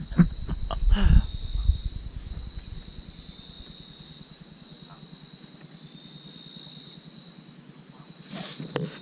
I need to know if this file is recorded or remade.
recorded